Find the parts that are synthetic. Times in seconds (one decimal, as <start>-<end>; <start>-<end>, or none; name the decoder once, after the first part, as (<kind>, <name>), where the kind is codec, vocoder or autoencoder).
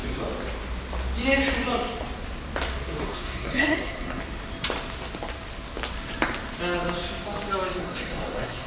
3.0-4.2 (codec, SNAC); 7.8-8.7